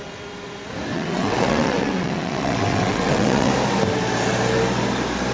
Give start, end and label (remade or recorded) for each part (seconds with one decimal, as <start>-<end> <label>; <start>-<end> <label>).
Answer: 0.0-0.9 recorded; 0.9-3.5 remade; 3.5-5.3 recorded